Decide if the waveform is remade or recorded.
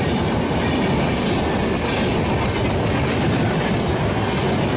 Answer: recorded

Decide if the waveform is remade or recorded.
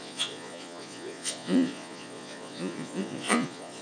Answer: remade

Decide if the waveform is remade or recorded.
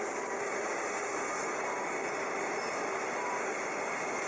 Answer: recorded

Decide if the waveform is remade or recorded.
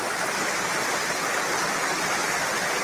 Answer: recorded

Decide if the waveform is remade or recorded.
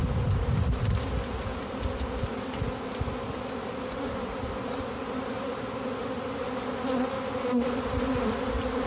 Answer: recorded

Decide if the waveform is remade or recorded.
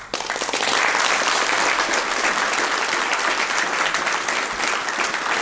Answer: recorded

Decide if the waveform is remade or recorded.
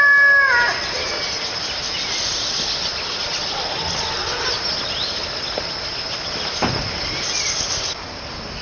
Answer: recorded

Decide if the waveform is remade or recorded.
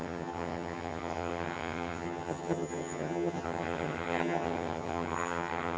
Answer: remade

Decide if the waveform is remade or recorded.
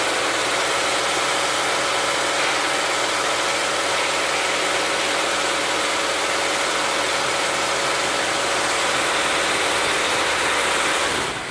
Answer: recorded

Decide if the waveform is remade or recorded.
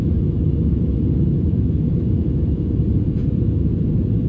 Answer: remade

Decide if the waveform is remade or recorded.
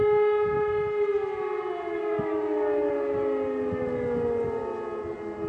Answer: recorded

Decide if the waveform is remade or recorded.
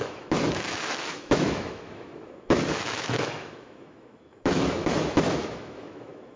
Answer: remade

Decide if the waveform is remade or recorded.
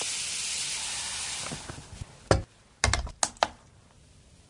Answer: recorded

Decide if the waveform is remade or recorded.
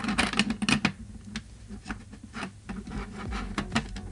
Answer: recorded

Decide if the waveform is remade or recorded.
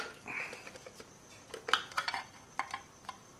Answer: recorded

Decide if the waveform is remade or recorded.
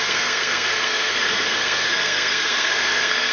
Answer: remade